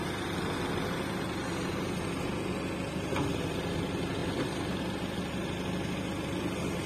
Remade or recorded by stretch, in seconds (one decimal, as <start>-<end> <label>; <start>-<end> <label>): 0.0-4.2 recorded; 4.2-4.8 remade; 4.8-6.9 recorded